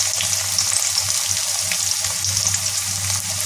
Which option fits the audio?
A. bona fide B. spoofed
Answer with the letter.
A